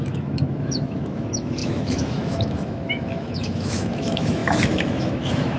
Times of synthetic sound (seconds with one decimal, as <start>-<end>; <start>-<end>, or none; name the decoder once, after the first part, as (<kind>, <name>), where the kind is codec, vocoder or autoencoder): 0.0-5.6 (autoencoder, DAC-VAE)